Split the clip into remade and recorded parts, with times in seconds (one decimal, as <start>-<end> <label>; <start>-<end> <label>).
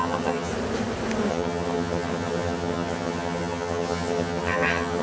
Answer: 0.0-0.5 remade; 0.5-1.3 recorded; 1.3-5.0 remade